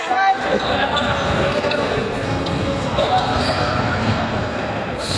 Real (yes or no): no